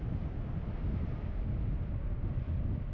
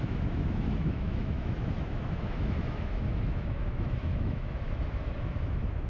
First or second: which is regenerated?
second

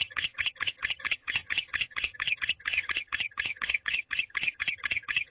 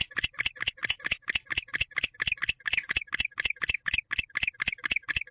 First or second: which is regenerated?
first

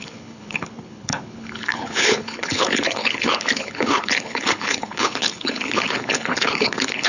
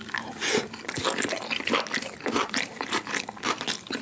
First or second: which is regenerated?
first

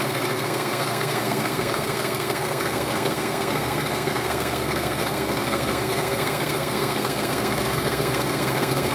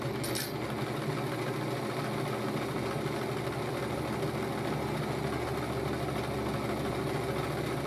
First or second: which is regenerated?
first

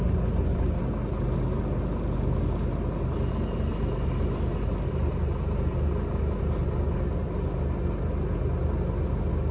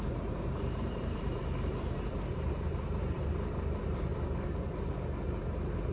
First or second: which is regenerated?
second